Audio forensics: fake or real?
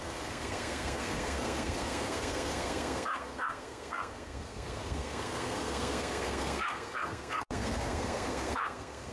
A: fake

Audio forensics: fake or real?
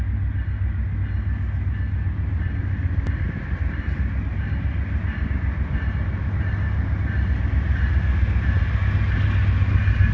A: real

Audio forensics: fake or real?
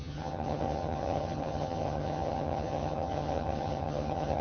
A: fake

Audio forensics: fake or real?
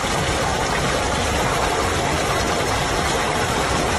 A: real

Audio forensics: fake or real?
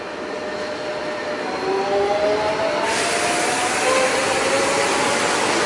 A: real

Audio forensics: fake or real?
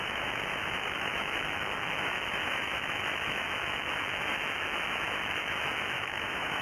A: fake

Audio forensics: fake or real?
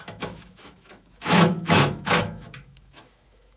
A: fake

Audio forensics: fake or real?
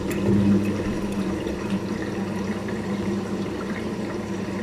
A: fake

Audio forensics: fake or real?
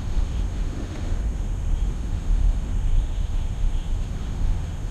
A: fake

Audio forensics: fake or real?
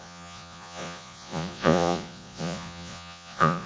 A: fake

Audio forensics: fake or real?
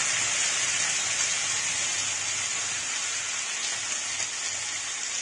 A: real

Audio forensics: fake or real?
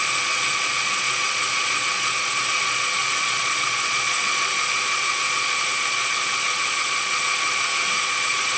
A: fake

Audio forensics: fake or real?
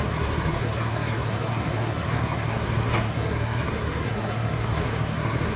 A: fake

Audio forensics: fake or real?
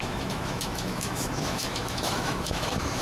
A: fake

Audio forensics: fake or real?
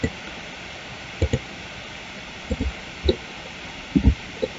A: real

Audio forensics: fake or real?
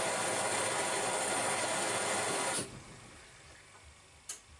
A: real